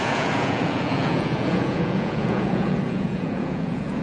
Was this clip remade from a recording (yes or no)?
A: yes